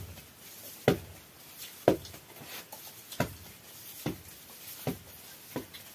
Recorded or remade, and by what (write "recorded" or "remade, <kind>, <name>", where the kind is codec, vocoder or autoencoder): recorded